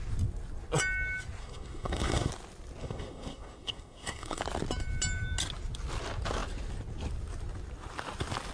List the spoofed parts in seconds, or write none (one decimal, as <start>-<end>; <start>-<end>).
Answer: 1.4-2.3; 2.8-4.4